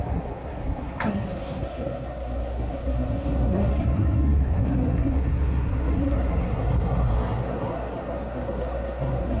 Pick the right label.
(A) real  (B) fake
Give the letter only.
B